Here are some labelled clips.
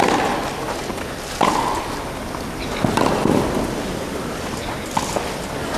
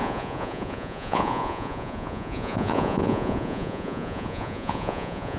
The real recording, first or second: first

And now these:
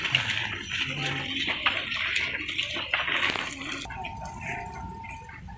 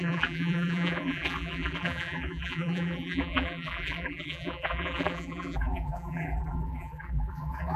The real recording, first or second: first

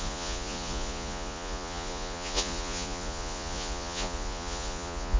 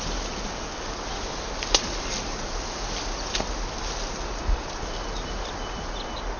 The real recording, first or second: second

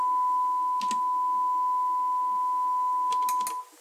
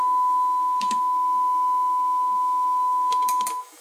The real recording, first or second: first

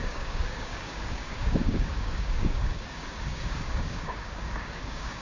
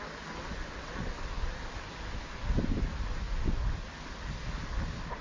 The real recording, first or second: second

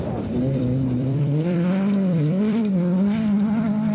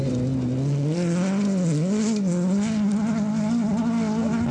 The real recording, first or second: second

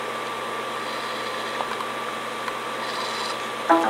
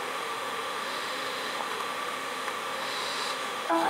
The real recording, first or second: first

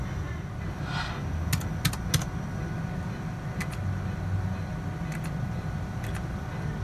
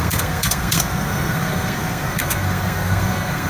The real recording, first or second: first